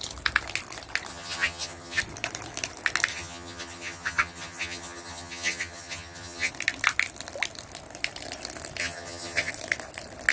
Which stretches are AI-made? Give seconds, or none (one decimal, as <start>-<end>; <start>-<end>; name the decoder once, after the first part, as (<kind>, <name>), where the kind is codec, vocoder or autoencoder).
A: 1.1-2.0 (vocoder, HiFi-GAN); 3.1-6.5; 8.8-9.5